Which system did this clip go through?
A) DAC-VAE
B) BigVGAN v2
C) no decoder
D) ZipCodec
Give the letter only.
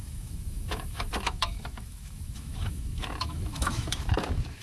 A